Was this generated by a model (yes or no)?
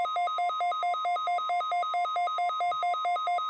no